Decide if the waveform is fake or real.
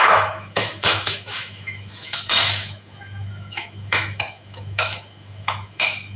fake